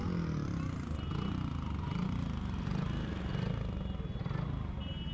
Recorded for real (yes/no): yes